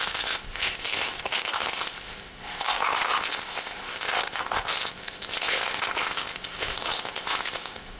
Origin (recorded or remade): remade